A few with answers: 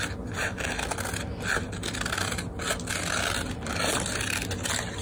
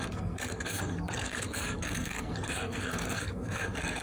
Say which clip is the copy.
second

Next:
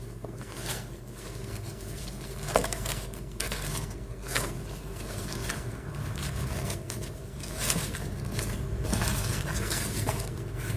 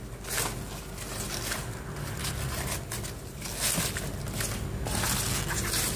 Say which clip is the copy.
first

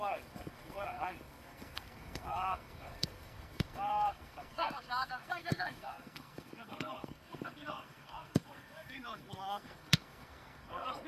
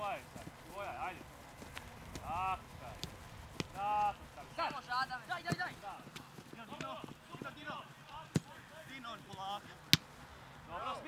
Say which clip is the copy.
first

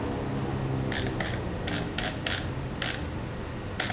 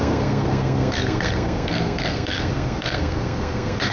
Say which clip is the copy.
second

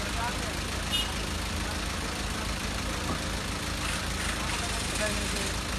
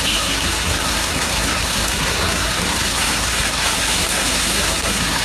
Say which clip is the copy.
second